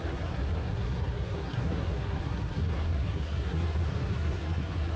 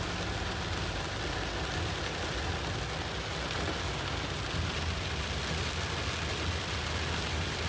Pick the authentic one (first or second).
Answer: second